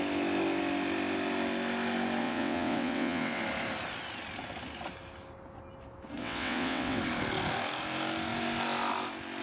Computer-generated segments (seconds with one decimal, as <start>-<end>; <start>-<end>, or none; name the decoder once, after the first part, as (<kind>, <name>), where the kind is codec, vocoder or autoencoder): 2.2-3.4 (vocoder, WaveNeXt); 6.2-7.0